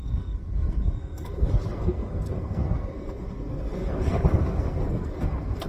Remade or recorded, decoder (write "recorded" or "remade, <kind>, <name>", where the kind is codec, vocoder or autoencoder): remade, codec, SNAC